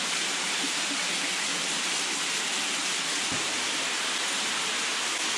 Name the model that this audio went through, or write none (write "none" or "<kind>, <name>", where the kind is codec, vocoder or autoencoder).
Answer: none